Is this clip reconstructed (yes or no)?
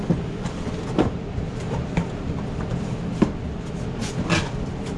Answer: no